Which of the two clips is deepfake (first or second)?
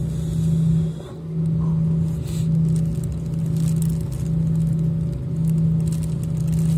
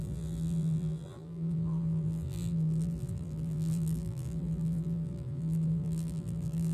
second